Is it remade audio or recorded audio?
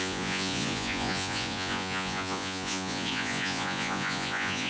remade